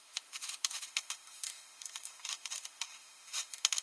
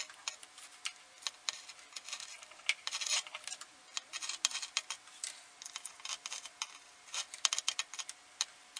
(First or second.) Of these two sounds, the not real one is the first